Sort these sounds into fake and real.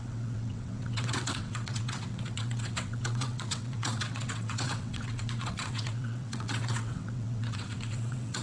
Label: fake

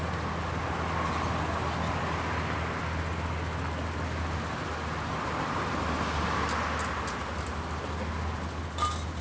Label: real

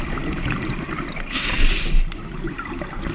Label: real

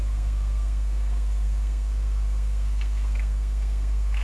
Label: fake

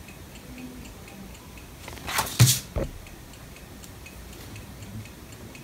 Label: real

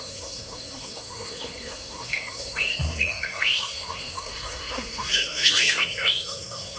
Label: fake